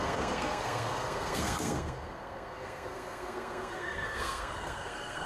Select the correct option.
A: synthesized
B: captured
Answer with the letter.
A